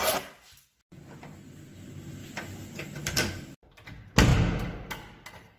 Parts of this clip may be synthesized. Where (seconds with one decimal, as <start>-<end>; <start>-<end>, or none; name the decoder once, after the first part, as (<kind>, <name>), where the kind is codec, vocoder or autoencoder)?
2.2-3.6 (vocoder, BigVGAN v2)